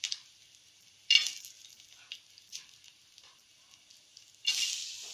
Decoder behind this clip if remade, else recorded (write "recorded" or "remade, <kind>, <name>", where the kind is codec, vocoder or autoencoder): recorded